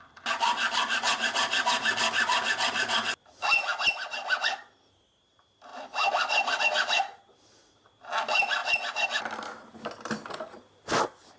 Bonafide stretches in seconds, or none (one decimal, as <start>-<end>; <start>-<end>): 0.0-11.4